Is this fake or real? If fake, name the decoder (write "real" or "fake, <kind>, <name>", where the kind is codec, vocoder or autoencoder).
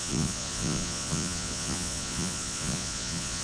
fake, vocoder, Vocos